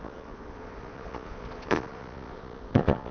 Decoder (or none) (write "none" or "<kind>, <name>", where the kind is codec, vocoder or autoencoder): vocoder, Vocos